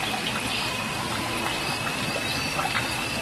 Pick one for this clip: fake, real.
real